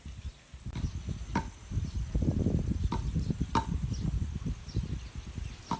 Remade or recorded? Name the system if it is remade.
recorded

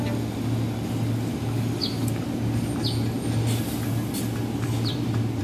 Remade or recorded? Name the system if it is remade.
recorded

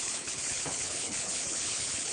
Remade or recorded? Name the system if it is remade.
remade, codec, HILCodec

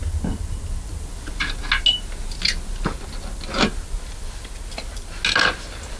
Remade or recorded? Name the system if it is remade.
recorded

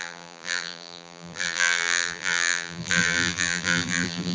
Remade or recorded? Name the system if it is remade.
remade, vocoder, BigVGAN v2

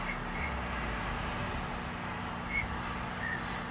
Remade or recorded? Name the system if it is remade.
recorded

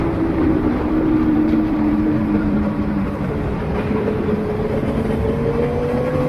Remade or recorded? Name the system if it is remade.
remade, vocoder, BigVGAN v2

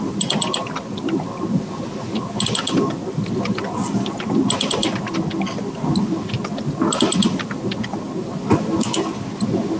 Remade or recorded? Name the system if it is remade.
recorded